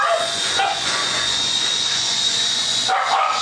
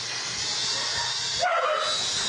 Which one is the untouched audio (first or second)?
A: second